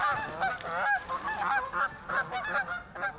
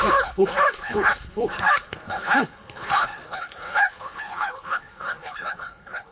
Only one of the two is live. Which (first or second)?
first